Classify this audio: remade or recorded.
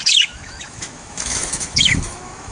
remade